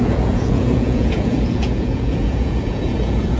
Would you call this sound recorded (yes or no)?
no